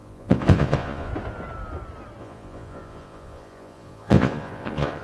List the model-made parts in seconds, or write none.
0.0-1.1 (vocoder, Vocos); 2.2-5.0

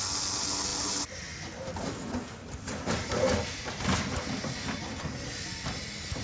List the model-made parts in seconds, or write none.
none

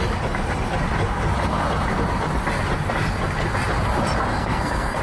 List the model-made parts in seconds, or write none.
4.3-5.0 (codec, SNAC)

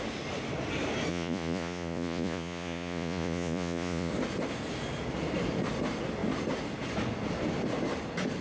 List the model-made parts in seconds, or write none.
1.1-4.1 (vocoder, Vocos)